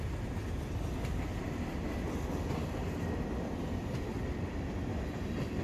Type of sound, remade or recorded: recorded